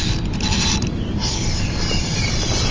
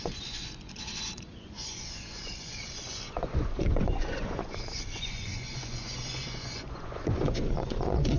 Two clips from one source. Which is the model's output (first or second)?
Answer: second